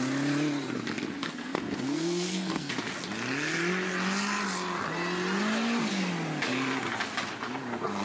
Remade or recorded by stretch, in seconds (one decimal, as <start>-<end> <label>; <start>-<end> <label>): 0.0-1.2 recorded; 1.2-2.7 remade; 2.7-8.0 recorded